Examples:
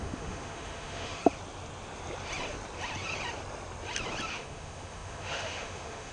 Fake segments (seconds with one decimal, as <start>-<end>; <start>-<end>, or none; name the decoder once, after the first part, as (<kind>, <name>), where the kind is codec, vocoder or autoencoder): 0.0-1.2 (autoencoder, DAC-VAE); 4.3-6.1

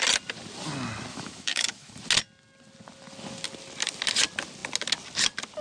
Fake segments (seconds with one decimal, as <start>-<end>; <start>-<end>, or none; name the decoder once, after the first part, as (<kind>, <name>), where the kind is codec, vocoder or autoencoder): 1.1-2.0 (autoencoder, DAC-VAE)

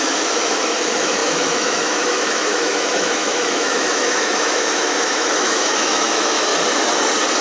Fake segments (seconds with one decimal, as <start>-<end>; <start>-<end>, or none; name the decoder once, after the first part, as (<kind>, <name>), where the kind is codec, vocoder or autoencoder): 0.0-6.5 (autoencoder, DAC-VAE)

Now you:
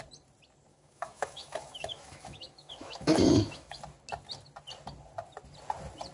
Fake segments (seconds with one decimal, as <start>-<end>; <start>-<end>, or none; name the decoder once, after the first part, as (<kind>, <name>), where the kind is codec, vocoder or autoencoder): 0.7-3.8 (autoencoder, DAC-VAE)